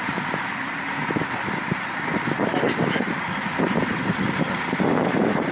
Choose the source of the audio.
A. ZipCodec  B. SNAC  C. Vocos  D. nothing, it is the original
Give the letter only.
D